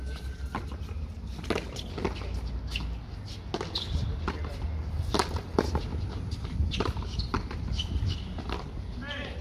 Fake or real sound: real